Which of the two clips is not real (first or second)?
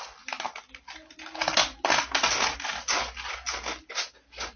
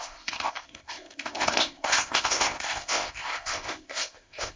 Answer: second